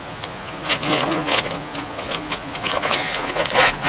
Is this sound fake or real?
fake